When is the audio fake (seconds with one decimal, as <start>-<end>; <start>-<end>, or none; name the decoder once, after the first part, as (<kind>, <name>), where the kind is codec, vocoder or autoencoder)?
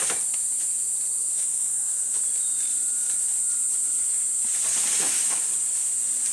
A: 1.2-2.2 (autoencoder, DAC-VAE); 5.0-5.5